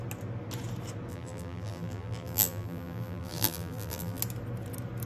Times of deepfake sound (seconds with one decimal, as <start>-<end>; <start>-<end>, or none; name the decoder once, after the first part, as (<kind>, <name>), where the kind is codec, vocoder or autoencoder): 1.1-4.2 (vocoder, BigVGAN v2)